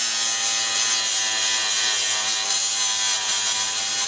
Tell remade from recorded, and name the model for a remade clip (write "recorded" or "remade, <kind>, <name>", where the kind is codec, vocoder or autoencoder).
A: recorded